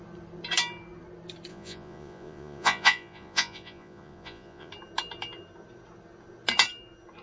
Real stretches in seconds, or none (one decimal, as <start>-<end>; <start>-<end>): 0.0-1.5; 4.7-7.2